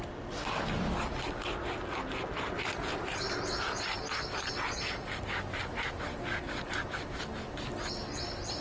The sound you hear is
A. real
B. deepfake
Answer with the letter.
A